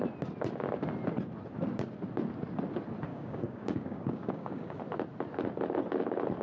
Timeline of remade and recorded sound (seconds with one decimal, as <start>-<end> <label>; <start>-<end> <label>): 0.0-3.1 recorded; 3.1-4.8 remade; 4.8-6.4 recorded